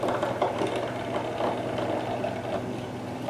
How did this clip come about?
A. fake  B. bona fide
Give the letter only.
B